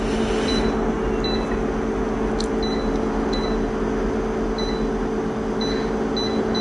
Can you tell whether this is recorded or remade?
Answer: recorded